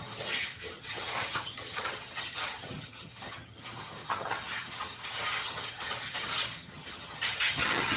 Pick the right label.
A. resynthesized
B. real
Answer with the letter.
A